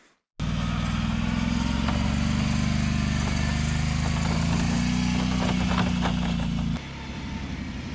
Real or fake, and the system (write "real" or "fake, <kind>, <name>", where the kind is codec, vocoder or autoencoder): real